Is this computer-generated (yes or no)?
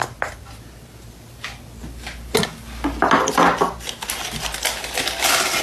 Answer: no